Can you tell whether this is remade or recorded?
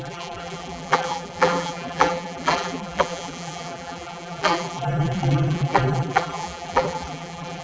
remade